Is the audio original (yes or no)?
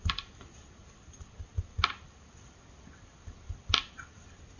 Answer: yes